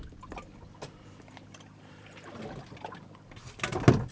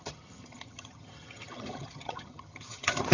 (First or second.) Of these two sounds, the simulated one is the second